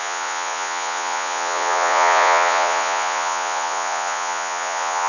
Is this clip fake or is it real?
fake